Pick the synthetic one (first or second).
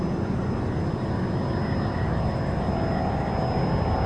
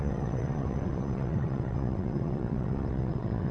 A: second